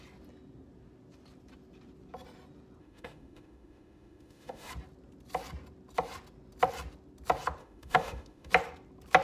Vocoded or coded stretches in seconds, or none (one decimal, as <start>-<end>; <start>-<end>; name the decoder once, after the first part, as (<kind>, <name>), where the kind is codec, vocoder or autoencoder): 2.8-4.7 (autoencoder, DAC-VAE); 7.6-8.5